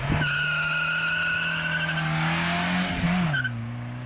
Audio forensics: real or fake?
real